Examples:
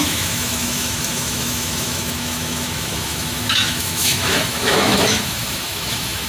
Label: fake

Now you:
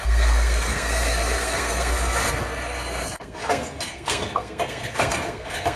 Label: fake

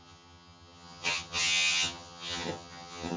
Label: fake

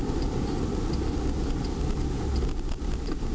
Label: real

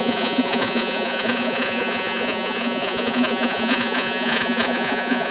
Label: fake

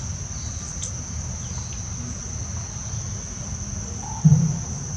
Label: real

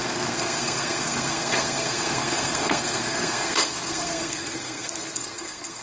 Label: fake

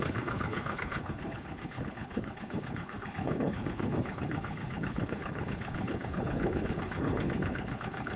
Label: fake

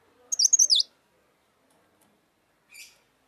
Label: real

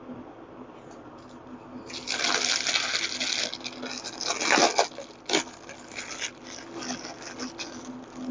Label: real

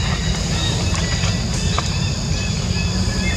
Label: real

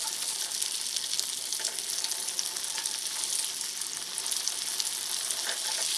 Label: real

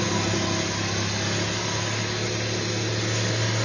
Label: real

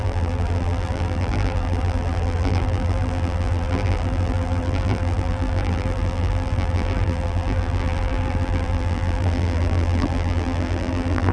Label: fake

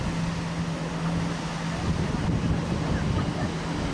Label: real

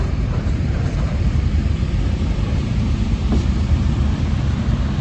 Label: fake